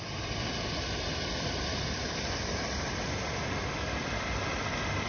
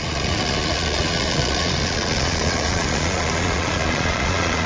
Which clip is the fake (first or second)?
second